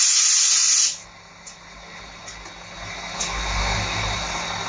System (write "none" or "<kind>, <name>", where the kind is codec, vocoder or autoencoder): none